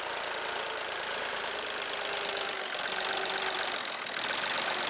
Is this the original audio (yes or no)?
yes